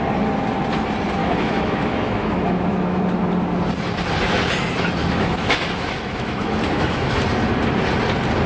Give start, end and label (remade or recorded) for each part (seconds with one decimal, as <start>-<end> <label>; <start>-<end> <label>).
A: 0.0-1.2 recorded; 1.2-3.0 remade; 3.0-5.0 recorded; 5.0-7.1 remade; 7.1-8.5 recorded